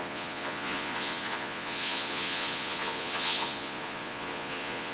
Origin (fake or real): fake